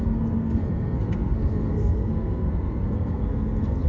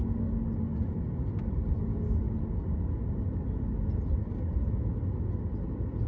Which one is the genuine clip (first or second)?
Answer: second